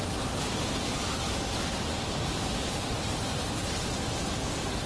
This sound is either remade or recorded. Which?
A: recorded